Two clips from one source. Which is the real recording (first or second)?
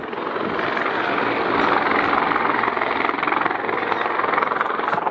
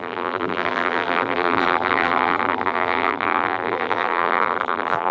first